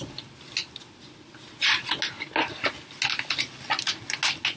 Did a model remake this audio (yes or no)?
no